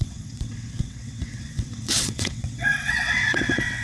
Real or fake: fake